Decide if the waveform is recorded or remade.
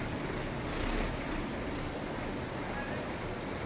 recorded